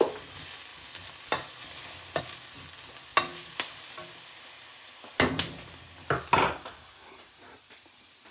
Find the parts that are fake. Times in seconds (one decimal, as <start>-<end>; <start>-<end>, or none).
none